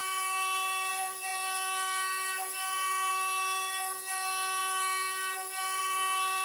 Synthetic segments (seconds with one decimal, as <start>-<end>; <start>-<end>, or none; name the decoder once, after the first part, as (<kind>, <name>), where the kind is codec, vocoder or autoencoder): 0.0-6.4 (codec, SNAC)